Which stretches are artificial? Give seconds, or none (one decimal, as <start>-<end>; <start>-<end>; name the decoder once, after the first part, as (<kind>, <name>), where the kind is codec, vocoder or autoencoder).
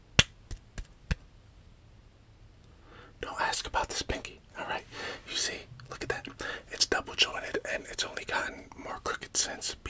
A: 7.3-8.2 (codec, HILCodec)